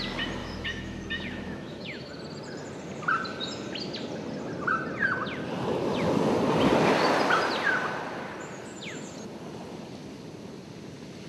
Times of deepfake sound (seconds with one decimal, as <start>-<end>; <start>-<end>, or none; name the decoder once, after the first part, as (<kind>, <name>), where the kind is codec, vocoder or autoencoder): 0.4-2.1 (autoencoder, DAC-VAE)

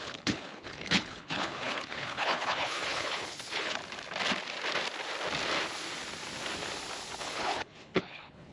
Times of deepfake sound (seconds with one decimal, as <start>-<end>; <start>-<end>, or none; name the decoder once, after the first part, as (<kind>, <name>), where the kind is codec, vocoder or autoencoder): 0.0-3.8 (codec, HILCodec); 7.2-8.5

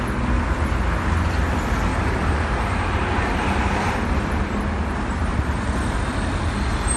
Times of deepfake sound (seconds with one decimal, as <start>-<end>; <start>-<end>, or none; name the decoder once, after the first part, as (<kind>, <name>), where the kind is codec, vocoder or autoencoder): 1.9-4.3 (vocoder, BigVGAN v2); 5.3-7.0

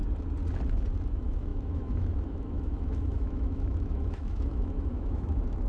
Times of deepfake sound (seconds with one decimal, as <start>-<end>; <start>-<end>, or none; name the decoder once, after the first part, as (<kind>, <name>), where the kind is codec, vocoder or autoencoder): 1.1-5.7 (autoencoder, DAC-VAE)

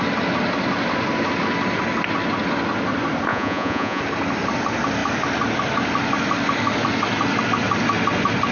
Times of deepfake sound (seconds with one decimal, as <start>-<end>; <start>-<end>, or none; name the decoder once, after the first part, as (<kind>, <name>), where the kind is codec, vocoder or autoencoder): 3.3-4.0 (vocoder, Vocos)

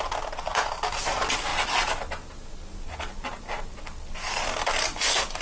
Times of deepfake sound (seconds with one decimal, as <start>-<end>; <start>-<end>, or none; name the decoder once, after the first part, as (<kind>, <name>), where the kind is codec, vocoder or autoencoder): none